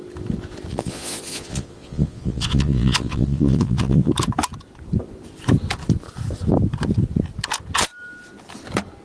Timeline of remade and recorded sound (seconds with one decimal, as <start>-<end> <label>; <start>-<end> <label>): 0.0-0.7 recorded; 0.7-4.1 remade; 4.1-9.0 recorded